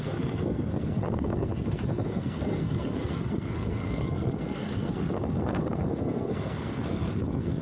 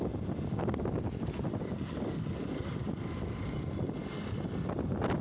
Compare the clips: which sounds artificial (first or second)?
first